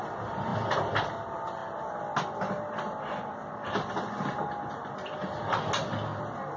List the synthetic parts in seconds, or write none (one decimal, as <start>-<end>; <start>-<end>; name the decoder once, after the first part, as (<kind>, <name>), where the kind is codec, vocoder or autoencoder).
none